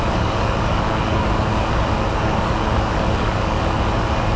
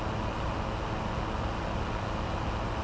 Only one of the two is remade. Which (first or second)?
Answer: first